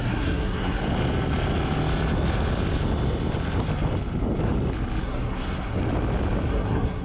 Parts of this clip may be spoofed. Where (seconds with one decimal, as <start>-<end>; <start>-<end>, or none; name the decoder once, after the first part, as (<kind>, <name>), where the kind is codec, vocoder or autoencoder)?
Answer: 0.0-0.8 (codec, SNAC); 5.0-5.8; 6.5-7.0

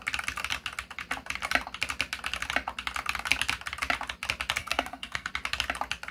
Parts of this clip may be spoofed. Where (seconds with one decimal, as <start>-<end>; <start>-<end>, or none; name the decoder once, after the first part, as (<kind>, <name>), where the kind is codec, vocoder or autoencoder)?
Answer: 4.6-5.3 (codec, SNAC)

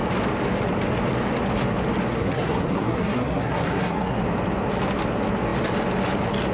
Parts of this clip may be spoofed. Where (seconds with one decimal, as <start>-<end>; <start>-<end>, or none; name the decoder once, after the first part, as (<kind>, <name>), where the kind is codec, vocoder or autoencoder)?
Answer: 2.1-4.2 (codec, SNAC)

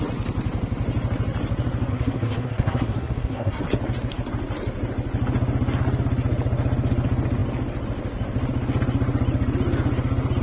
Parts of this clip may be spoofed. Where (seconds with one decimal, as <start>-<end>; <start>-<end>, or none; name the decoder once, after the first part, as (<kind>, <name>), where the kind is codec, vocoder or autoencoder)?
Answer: 1.9-3.6 (codec, SNAC)

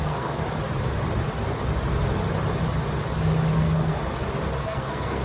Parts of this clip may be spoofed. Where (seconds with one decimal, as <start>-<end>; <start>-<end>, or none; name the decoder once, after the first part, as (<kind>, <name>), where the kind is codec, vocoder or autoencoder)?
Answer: 0.0-0.4 (codec, SNAC); 3.5-4.0; 4.6-5.2

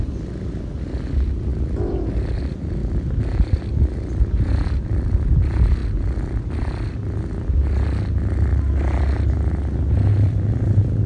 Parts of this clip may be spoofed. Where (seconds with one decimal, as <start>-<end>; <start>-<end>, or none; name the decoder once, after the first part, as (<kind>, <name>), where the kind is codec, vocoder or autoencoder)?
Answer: none

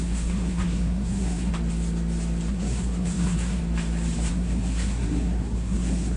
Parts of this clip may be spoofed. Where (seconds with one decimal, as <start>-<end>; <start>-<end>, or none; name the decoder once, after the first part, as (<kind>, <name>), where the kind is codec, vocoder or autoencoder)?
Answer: 0.0-1.5 (codec, SNAC); 2.5-3.6; 4.3-6.2